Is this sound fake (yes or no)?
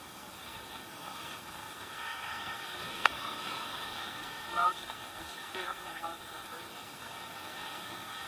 yes